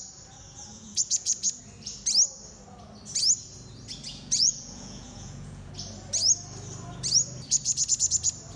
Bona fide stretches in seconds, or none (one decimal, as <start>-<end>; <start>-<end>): 0.0-0.7; 1.6-4.1; 5.7-8.6